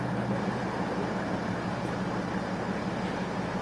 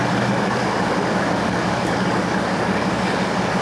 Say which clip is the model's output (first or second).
second